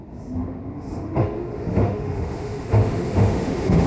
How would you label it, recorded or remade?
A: remade